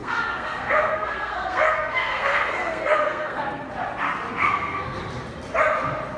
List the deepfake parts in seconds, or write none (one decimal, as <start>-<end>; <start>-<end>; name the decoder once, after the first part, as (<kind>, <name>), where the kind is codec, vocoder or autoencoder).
0.0-3.7 (codec, SNAC); 4.4-5.0